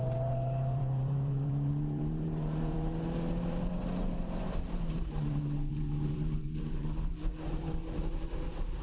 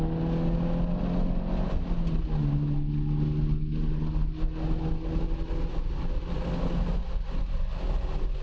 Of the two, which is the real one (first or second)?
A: second